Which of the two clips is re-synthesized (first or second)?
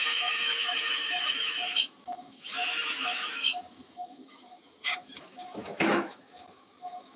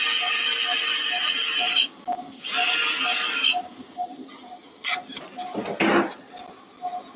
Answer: first